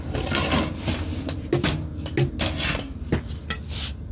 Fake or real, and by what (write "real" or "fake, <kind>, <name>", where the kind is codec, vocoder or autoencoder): real